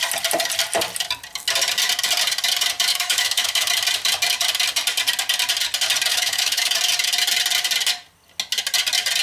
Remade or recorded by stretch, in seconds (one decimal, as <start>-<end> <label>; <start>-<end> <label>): 0.0-2.9 recorded; 2.9-3.7 remade; 3.7-6.1 recorded; 6.1-6.7 remade; 6.7-9.2 recorded